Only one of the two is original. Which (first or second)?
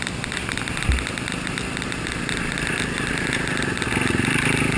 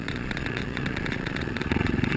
first